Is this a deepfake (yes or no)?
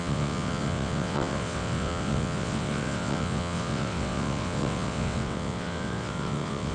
yes